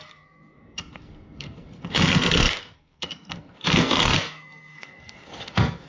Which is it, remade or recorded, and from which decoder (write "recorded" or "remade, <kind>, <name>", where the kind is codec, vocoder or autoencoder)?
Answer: remade, codec, SNAC